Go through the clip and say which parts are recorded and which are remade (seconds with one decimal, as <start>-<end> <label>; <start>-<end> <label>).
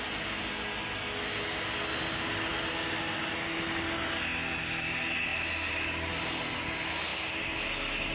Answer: 0.0-8.1 recorded